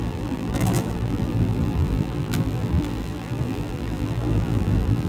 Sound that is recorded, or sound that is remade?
remade